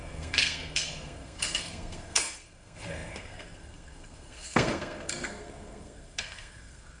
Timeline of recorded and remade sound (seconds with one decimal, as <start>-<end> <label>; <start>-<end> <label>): 0.0-7.0 remade